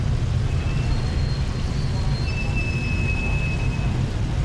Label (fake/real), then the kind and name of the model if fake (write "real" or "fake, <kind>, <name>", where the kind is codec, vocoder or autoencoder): real